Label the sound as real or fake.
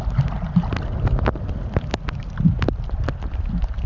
real